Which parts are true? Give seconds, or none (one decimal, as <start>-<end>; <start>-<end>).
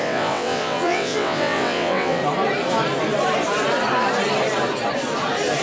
2.2-5.6